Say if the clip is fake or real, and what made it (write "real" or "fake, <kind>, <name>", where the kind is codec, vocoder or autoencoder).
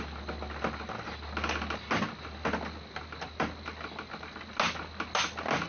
real